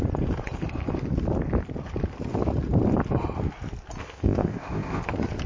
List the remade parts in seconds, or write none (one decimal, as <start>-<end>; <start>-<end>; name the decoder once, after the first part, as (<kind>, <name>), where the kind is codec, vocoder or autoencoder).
4.0-5.0 (codec, ZipCodec)